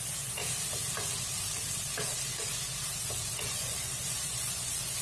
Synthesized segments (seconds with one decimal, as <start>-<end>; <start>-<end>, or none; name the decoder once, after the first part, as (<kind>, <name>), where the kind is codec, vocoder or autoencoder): 0.0-0.4 (vocoder, Vocos); 3.4-5.0